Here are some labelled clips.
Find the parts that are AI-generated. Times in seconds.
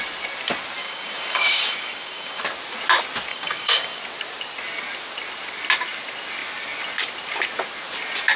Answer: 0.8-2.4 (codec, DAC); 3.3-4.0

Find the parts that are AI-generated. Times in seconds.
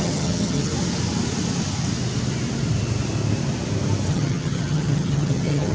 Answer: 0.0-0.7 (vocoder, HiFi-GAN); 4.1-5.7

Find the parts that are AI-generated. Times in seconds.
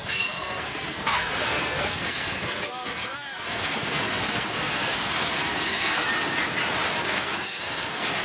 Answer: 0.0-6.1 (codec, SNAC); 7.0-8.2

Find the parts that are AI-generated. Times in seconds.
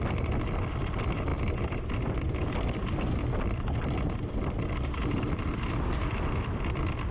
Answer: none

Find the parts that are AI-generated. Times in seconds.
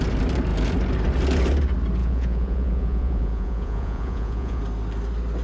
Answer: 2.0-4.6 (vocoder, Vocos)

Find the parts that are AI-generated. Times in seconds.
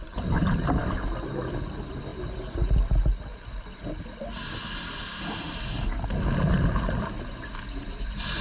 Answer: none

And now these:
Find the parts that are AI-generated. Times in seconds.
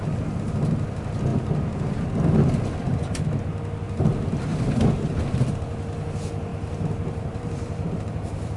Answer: 1.3-2.1 (vocoder, BigVGAN v2); 4.5-5.2; 6.5-8.6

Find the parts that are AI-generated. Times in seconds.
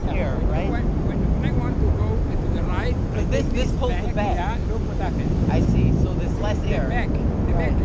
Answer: none